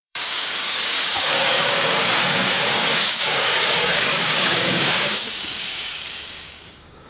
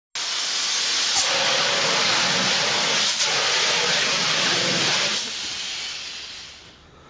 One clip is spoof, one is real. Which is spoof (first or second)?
first